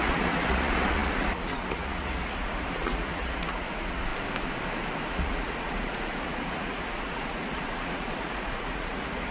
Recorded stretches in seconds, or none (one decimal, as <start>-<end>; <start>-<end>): 4.1-5.1